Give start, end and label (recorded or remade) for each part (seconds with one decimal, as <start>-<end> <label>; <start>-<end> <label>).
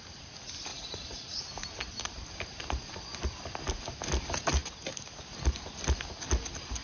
0.0-0.7 recorded; 0.7-1.4 remade; 1.4-6.8 recorded